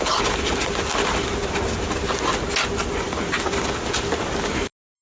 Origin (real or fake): real